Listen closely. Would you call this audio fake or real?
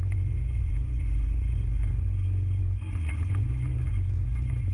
fake